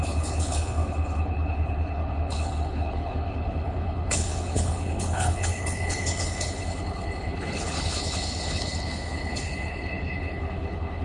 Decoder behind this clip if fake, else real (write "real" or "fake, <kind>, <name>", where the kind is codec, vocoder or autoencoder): fake, codec, HILCodec